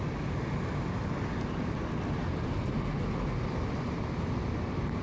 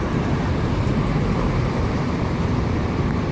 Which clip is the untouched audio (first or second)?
first